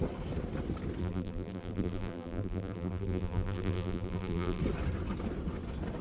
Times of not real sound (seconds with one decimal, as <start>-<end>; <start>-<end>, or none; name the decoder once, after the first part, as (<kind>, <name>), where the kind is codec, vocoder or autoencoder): 1.0-4.6 (vocoder, BigVGAN v2)